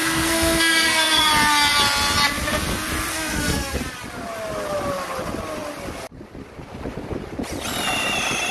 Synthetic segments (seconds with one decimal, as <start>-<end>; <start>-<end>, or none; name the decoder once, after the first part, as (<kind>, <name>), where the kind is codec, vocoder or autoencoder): 0.0-1.3 (codec, SNAC); 3.1-3.8